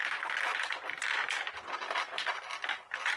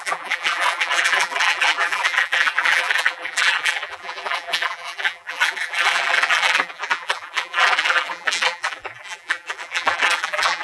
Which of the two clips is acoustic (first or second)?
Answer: first